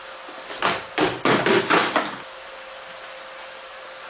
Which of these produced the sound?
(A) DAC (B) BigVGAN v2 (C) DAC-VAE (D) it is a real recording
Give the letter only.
D